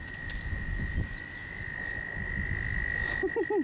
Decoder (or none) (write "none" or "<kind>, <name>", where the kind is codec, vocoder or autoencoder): none